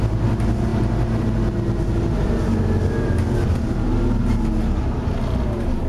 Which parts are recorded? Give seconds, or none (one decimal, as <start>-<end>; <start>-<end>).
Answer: 0.0-5.9